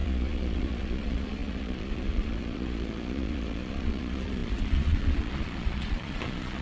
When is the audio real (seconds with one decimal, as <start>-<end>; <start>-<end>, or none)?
none